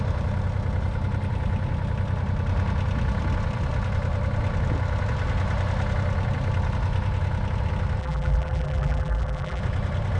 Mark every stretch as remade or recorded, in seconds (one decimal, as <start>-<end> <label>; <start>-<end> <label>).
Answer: 0.0-8.0 recorded; 8.0-9.6 remade; 9.6-10.2 recorded